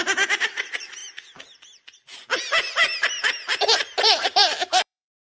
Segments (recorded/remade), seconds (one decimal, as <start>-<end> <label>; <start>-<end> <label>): 0.0-1.0 remade; 1.0-4.0 recorded; 4.0-5.4 remade